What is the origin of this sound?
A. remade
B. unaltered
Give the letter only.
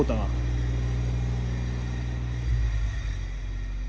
B